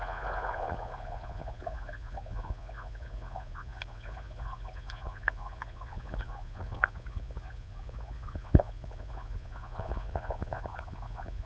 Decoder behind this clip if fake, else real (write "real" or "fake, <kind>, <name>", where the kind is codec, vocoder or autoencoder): fake, vocoder, Vocos